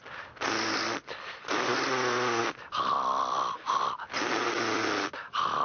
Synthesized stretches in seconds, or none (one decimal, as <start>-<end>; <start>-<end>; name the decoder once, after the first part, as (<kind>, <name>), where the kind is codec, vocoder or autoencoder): none